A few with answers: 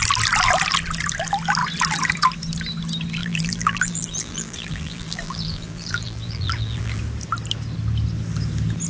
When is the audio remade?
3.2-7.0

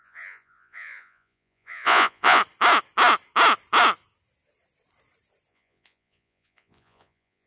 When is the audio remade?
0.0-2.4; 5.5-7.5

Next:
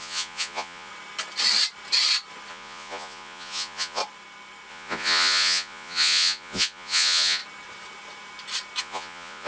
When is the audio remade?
0.0-0.9; 2.5-4.0; 4.7-7.4; 8.8-9.5

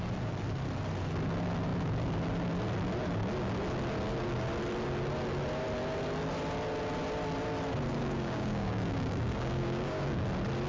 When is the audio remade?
7.9-10.2